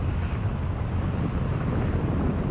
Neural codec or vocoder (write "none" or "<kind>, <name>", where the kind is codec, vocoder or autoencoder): none